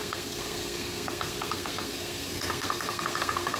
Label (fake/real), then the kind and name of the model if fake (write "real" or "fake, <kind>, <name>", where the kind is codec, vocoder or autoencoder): fake, codec, SNAC